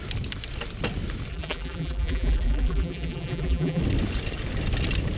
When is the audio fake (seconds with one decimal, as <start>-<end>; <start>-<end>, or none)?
1.3-3.8